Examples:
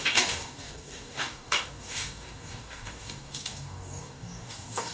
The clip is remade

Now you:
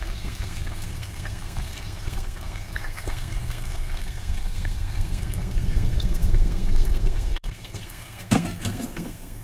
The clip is remade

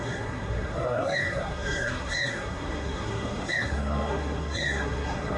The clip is remade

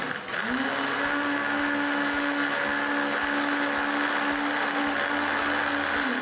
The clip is recorded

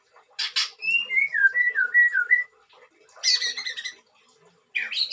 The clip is recorded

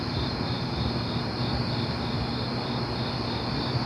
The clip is recorded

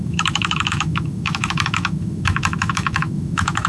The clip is remade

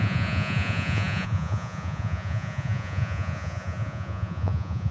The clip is remade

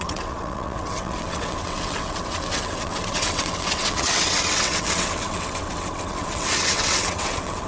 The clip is remade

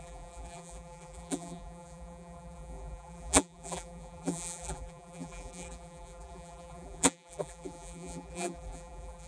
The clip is remade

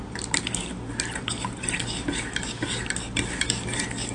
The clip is recorded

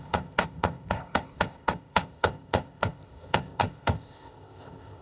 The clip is remade